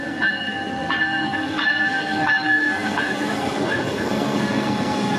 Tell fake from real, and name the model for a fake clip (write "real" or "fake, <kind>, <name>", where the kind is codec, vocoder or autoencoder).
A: fake, codec, SNAC